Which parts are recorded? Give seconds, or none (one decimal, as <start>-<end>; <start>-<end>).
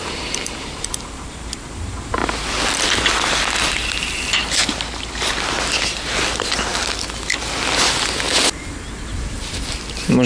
1.2-10.3